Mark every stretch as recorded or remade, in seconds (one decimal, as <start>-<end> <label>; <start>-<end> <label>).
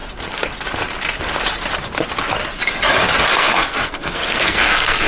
0.0-3.3 recorded; 3.3-5.1 remade